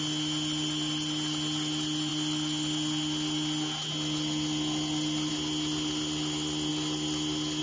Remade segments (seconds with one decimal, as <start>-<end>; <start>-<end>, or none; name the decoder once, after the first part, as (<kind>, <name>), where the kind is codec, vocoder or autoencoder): none

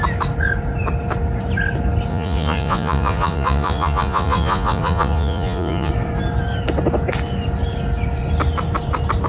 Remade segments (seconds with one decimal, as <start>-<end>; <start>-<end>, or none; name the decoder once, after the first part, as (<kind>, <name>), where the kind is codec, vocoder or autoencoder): 2.1-5.9 (vocoder, Vocos)

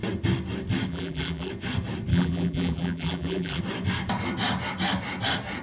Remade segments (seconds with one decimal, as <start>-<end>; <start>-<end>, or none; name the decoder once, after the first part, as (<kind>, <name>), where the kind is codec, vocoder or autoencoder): 0.9-1.5 (vocoder, BigVGAN v2); 2.1-3.6

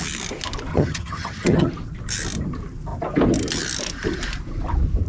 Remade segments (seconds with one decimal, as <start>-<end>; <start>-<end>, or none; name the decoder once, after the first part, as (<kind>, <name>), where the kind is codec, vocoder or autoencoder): 0.7-1.7 (vocoder, HiFi-GAN)

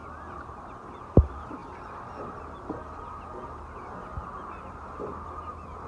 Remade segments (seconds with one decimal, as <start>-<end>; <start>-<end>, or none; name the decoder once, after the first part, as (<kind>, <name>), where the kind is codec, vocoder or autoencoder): 0.0-1.0 (vocoder, BigVGAN v2); 4.3-4.8

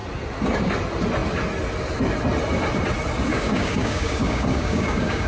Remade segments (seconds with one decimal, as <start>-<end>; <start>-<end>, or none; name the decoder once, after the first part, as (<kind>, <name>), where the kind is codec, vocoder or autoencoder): 3.3-5.3 (codec, DAC)

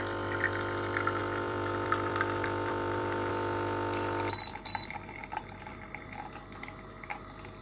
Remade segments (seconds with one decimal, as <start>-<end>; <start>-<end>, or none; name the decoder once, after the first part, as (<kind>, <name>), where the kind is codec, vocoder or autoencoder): 1.2-3.3 (vocoder, BigVGAN v2)